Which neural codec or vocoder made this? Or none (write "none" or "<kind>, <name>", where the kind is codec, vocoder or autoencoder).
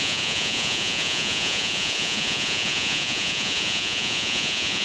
vocoder, Vocos